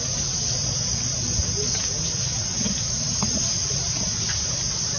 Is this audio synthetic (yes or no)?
no